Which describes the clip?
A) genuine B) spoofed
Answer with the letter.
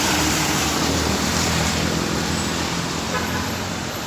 B